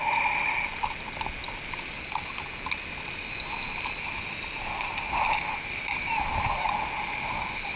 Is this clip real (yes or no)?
yes